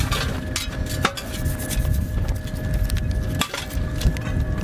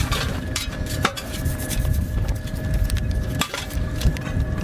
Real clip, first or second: first